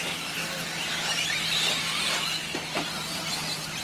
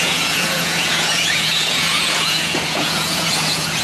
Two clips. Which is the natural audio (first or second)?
first